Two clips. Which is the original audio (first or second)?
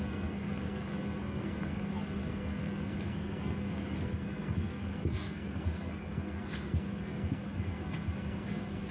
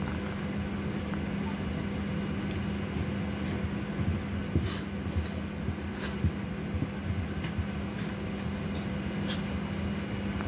second